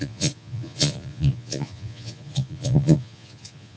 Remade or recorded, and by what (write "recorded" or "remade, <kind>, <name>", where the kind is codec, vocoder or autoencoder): remade, vocoder, Vocos